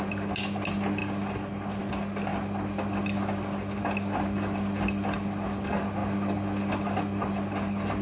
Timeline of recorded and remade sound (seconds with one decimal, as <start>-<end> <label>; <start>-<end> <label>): 0.0-8.0 recorded